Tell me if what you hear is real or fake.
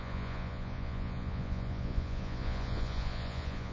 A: fake